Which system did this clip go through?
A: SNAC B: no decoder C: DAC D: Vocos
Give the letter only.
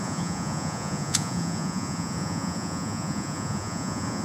D